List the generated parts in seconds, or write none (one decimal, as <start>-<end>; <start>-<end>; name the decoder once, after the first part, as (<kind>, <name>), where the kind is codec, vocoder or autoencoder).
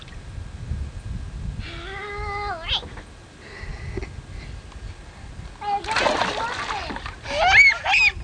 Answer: none